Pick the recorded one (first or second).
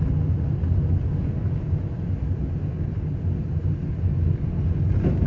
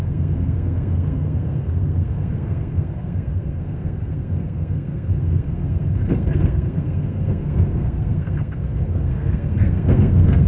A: first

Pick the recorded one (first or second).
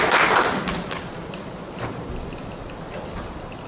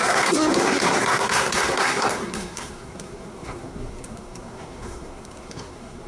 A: first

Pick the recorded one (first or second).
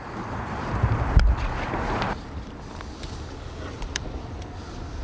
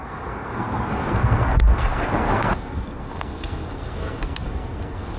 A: first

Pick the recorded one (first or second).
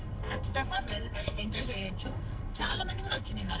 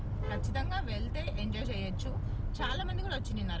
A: second